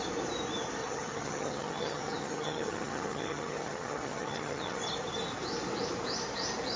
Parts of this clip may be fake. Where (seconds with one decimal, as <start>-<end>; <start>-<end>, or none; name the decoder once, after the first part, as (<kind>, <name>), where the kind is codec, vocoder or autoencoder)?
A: 0.8-4.8 (vocoder, HiFi-GAN)